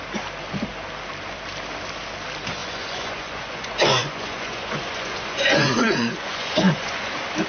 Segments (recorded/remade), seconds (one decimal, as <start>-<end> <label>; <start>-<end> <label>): 0.0-2.6 recorded; 2.6-7.1 remade; 7.1-7.5 recorded